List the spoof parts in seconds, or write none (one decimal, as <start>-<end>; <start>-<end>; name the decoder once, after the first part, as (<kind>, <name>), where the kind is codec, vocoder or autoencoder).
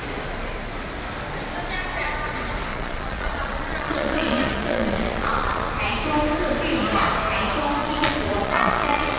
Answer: 2.7-5.7 (vocoder, Vocos); 7.8-9.2